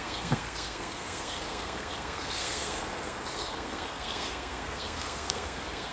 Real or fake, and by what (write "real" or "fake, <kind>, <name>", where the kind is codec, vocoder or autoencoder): fake, codec, SNAC